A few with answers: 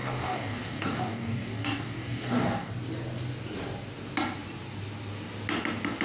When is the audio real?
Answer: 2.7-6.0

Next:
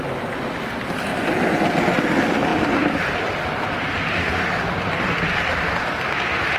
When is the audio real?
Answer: 0.0-6.6

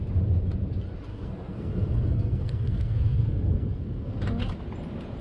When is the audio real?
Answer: 0.0-1.1; 4.2-5.2

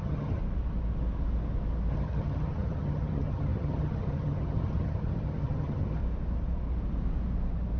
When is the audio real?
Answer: 0.4-1.9; 6.0-7.8

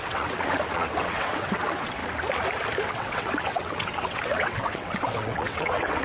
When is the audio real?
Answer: 2.0-2.9

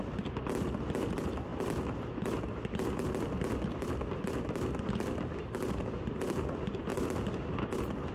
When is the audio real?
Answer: 0.0-8.1

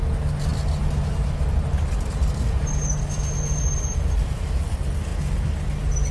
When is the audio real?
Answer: 0.0-6.1

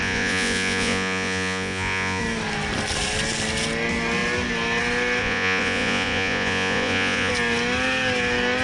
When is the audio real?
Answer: 2.2-5.2; 7.3-8.6